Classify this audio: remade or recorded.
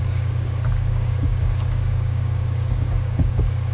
remade